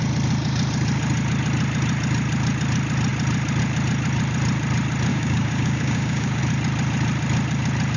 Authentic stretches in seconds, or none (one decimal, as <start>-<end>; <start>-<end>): 0.0-5.1; 6.4-8.0